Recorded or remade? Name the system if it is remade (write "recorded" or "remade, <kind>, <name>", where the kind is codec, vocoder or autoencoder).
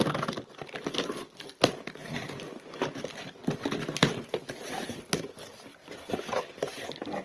recorded